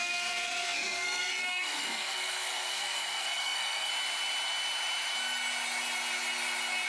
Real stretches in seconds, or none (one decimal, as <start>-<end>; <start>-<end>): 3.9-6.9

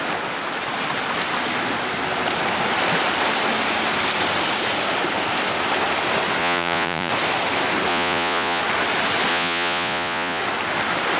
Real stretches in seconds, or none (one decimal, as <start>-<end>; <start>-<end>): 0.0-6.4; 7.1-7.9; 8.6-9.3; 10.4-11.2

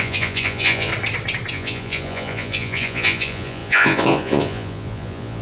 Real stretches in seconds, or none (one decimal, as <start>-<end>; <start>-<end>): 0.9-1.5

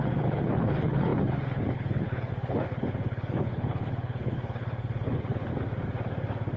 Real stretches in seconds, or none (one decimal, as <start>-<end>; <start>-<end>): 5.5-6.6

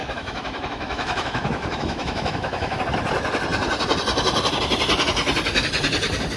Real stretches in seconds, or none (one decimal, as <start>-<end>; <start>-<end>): 2.8-6.4